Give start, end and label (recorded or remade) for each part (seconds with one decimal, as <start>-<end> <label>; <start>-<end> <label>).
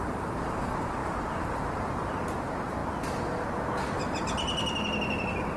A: 0.0-2.8 remade; 2.8-4.0 recorded; 4.0-5.6 remade